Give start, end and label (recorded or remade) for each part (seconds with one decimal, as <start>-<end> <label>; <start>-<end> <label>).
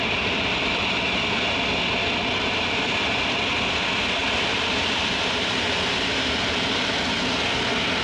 0.0-4.2 recorded; 4.2-6.9 remade; 6.9-8.0 recorded